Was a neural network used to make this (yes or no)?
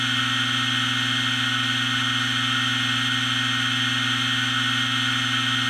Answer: no